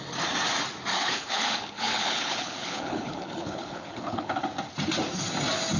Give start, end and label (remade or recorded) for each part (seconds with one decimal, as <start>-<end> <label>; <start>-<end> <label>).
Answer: 0.0-0.9 recorded; 0.9-4.4 remade; 4.4-5.8 recorded